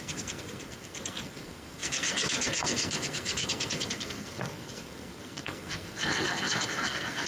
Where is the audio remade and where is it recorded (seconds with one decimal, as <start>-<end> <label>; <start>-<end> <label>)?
0.0-7.3 remade